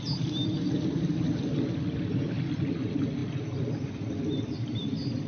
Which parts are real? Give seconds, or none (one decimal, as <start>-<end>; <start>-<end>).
0.0-5.3